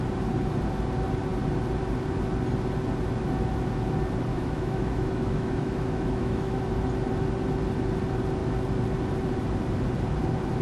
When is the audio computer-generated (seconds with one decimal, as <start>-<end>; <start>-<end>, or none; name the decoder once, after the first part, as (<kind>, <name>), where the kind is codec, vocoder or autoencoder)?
4.3-6.6 (autoencoder, DAC-VAE)